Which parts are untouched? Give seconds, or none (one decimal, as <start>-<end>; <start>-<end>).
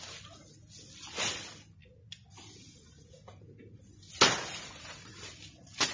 0.0-5.9